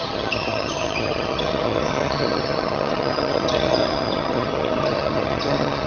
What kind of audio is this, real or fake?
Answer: fake